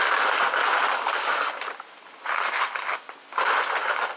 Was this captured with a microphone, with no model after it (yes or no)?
yes